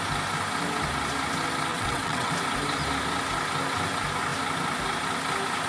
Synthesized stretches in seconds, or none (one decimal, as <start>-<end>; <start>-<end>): 1.7-2.3